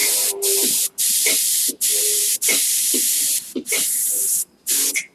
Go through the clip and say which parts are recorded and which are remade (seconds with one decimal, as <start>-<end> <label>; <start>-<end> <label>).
0.0-5.1 remade